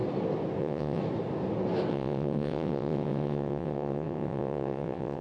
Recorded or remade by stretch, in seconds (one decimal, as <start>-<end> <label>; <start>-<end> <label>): 0.0-0.6 recorded; 0.6-1.0 remade; 1.0-1.9 recorded; 1.9-5.2 remade